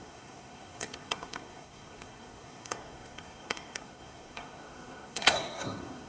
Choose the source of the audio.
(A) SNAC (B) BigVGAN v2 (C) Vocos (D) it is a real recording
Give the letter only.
A